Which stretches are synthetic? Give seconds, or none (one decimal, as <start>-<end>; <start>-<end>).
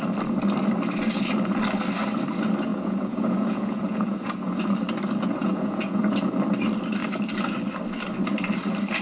2.7-4.6; 5.4-6.0